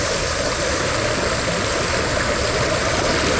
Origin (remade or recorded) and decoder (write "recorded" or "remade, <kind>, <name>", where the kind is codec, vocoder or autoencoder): recorded